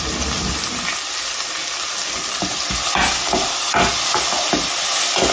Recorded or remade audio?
recorded